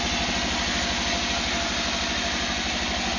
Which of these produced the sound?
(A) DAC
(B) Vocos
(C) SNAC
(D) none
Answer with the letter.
D